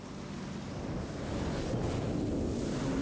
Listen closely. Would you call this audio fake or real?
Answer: real